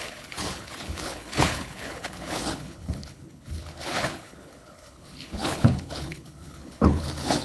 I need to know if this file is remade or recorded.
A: remade